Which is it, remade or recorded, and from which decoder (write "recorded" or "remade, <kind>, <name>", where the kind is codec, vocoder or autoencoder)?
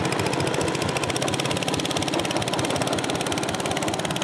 recorded